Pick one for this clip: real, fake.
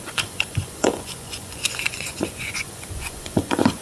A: fake